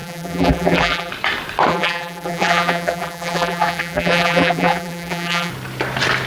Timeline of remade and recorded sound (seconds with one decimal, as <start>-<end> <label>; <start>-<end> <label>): 0.0-1.1 remade; 1.1-1.7 recorded; 1.7-5.5 remade; 5.5-6.3 recorded